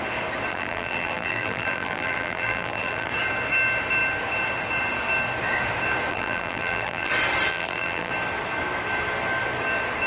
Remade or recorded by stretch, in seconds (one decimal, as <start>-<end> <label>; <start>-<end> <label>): 0.0-0.5 recorded; 0.5-3.1 remade; 3.1-6.1 recorded; 6.1-7.1 remade; 7.1-7.5 recorded; 7.5-8.1 remade; 8.1-10.1 recorded